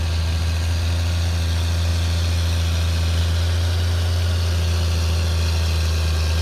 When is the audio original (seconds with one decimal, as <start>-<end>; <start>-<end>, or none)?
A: 0.0-6.4